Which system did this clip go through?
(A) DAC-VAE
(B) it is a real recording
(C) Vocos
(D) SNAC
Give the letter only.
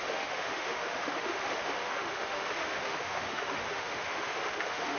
A